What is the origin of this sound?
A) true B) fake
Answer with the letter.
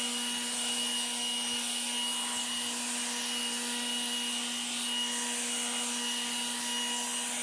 A